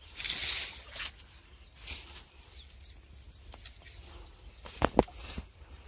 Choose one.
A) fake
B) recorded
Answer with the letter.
B